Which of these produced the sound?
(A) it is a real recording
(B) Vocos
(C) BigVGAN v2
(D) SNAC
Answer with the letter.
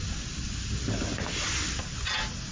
A